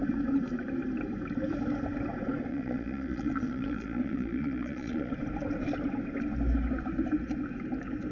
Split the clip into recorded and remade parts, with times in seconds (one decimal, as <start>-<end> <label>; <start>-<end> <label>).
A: 0.0-2.5 recorded; 2.5-5.1 remade; 5.1-8.1 recorded